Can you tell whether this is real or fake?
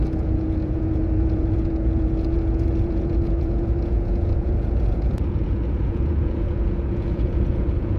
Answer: fake